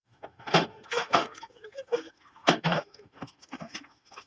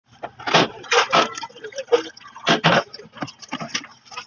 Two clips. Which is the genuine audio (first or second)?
second